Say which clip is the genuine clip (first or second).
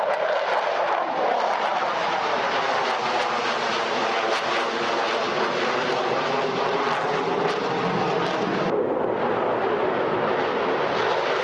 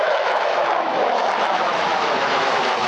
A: first